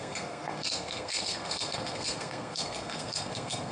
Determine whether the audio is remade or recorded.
remade